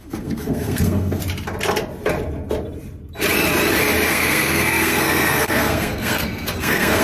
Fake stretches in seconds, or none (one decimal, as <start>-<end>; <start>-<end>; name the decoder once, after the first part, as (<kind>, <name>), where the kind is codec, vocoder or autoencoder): 0.0-1.2 (codec, SNAC); 4.1-7.0